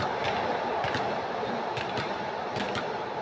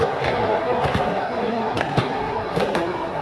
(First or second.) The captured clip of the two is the first